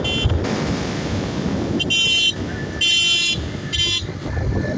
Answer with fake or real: real